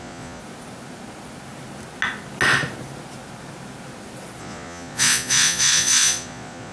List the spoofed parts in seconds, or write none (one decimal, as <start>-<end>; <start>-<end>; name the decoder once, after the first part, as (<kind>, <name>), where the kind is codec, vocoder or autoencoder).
0.0-0.4 (vocoder, Vocos); 4.4-6.7